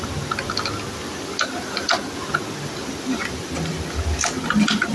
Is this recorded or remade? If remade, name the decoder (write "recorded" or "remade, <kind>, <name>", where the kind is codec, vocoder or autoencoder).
recorded